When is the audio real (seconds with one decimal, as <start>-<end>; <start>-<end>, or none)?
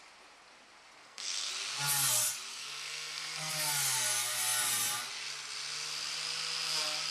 0.0-1.0; 1.5-2.5; 3.5-7.1